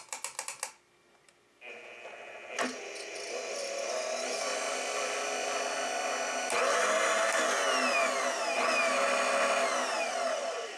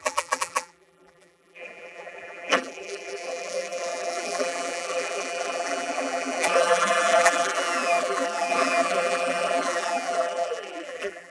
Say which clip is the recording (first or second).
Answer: first